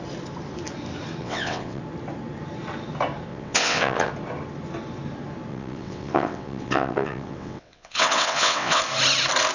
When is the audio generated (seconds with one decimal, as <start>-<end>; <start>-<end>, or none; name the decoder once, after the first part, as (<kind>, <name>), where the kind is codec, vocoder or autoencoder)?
1.2-1.8 (vocoder, WaveNeXt); 3.3-4.1; 5.5-8.8